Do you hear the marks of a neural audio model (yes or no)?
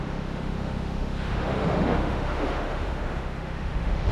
yes